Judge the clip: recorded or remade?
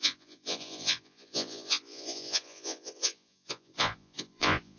remade